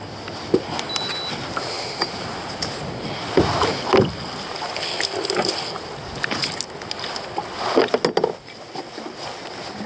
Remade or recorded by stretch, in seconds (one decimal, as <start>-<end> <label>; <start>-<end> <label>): 0.0-9.9 recorded

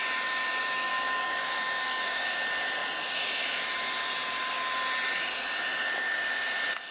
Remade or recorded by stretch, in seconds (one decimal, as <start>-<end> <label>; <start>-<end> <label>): 0.0-0.9 recorded; 0.9-2.4 remade; 2.4-6.9 recorded

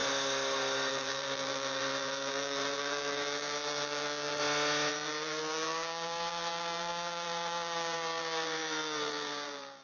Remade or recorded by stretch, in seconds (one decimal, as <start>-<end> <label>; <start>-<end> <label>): 0.0-0.9 recorded; 0.9-4.4 remade; 4.4-4.9 recorded; 4.9-9.8 remade

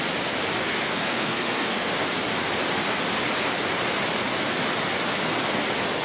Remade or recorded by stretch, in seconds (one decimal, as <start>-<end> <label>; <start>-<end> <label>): 0.0-0.6 recorded; 0.6-1.9 remade; 1.9-6.0 recorded